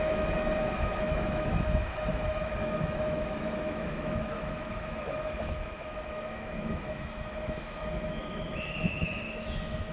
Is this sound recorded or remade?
remade